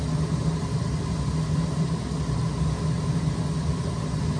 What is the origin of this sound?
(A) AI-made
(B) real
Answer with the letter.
B